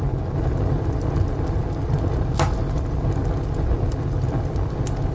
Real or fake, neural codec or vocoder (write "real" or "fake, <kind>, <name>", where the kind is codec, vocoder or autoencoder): real